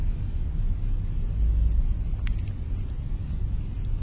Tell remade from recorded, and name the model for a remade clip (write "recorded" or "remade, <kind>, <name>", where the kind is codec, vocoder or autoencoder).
recorded